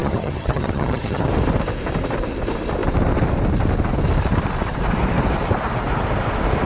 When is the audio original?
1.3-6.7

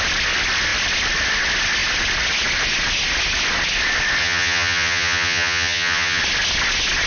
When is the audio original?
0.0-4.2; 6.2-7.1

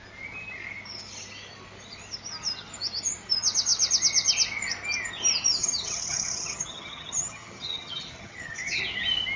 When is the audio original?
0.0-5.6; 8.8-9.4

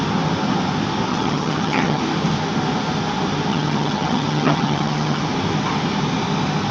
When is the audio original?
0.0-1.1; 2.0-3.5; 5.2-6.7

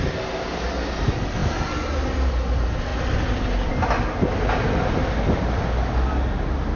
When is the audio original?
0.0-6.8